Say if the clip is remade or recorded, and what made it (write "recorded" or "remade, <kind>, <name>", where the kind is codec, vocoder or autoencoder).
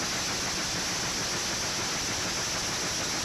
recorded